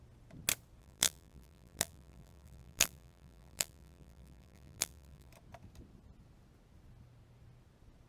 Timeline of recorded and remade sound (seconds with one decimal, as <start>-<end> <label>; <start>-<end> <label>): 0.0-0.8 recorded; 0.8-5.3 remade; 5.3-8.1 recorded